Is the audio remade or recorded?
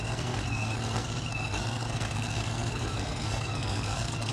remade